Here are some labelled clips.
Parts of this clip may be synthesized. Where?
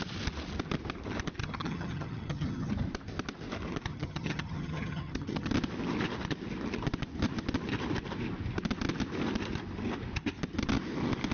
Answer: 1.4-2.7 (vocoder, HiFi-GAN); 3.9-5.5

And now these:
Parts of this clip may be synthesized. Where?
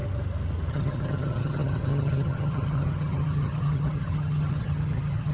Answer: 0.7-5.3 (vocoder, HiFi-GAN)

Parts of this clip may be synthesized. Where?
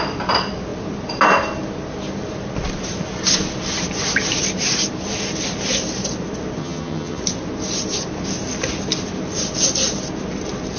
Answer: 6.6-7.2 (vocoder, HiFi-GAN)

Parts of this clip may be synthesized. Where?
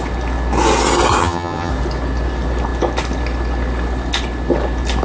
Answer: 1.2-1.7 (vocoder, HiFi-GAN)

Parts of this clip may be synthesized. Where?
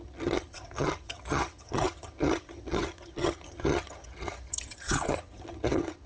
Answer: 0.0-6.1 (vocoder, HiFi-GAN)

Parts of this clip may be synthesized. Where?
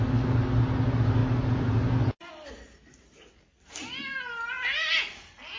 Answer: none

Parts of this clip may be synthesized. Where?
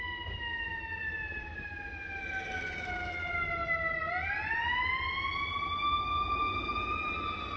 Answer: none